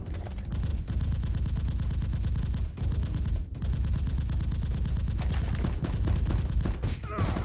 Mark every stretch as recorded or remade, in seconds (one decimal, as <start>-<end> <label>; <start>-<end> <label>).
0.0-7.4 recorded